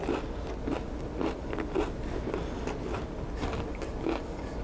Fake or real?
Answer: real